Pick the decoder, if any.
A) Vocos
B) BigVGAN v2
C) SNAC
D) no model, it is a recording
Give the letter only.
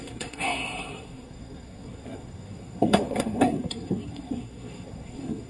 C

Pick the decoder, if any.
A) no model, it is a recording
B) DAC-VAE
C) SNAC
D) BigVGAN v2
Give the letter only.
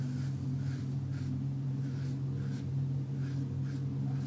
A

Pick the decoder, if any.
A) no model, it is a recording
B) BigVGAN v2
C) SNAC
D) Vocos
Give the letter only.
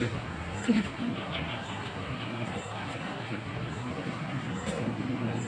C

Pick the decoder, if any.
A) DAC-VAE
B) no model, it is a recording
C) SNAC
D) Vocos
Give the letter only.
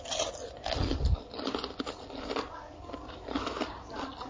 B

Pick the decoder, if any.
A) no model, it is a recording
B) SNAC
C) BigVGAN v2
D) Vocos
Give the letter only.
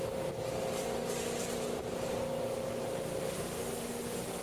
A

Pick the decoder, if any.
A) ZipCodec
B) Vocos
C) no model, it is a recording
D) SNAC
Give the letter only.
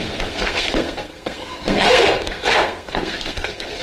D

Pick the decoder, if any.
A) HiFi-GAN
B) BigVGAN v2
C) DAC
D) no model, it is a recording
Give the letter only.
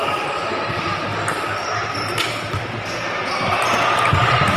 B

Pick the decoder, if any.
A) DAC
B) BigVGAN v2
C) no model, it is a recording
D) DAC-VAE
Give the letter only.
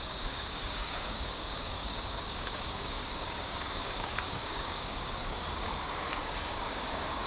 A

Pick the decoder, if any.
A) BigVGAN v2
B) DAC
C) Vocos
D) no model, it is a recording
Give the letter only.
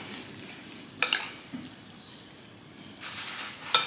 D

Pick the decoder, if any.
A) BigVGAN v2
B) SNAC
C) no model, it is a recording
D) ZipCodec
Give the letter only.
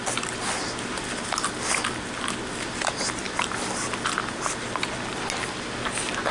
C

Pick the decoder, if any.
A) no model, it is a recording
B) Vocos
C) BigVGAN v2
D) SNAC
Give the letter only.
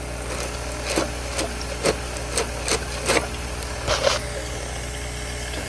A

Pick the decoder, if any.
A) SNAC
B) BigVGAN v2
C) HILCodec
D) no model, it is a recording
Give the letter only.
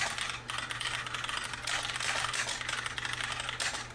D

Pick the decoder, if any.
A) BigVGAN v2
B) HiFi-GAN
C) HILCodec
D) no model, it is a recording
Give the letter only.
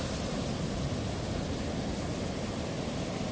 D